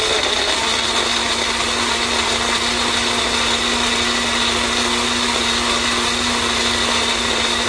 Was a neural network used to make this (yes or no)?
no